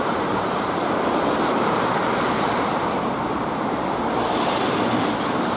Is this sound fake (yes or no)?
yes